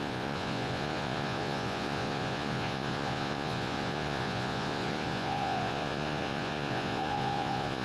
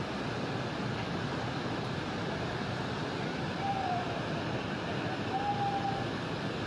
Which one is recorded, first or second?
second